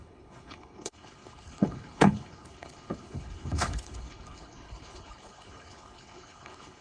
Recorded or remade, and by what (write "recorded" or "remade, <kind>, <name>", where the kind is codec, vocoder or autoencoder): remade, codec, HILCodec